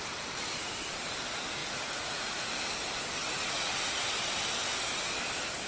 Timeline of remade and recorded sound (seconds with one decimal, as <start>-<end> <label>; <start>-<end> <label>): 0.0-1.6 recorded; 1.6-2.5 remade; 2.5-3.2 recorded; 3.2-3.7 remade; 3.7-5.7 recorded

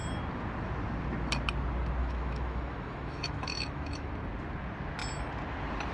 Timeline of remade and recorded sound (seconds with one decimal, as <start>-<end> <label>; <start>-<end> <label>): 0.0-2.0 recorded; 2.0-4.1 remade; 4.1-5.9 recorded